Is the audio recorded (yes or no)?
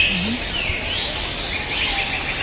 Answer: yes